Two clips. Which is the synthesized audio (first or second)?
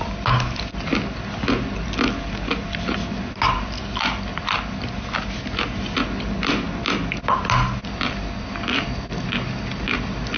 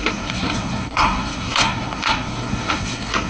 second